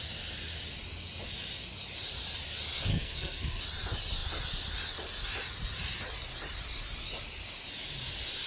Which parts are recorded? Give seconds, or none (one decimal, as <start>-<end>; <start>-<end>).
0.0-2.9; 3.6-8.5